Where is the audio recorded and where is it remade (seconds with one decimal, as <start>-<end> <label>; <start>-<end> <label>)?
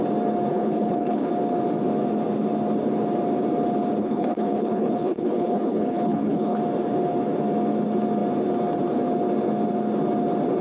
0.0-0.5 recorded; 0.5-1.3 remade; 1.3-4.0 recorded; 4.0-6.6 remade; 6.6-10.6 recorded